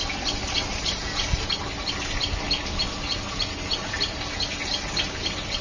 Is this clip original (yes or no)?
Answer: yes